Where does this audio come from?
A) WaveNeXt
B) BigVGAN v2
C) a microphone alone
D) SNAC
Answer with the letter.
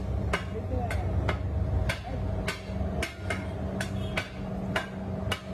C